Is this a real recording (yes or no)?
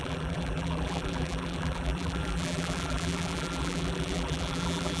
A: no